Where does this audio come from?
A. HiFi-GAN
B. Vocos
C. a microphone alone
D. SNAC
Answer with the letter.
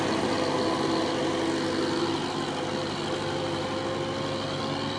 C